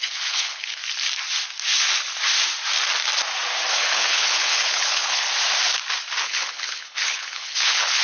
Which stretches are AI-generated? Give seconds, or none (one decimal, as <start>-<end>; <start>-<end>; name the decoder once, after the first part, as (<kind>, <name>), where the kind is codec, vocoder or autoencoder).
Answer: 0.0-0.8 (codec, HILCodec); 3.7-5.3; 6.2-8.0